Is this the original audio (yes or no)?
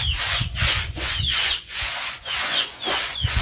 no